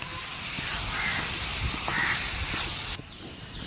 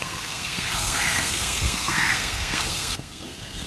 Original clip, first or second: first